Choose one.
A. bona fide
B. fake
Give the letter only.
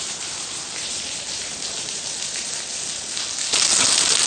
A